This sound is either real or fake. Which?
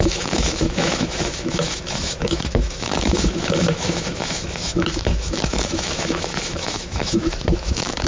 fake